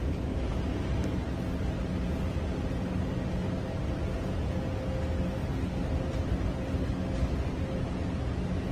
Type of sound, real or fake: real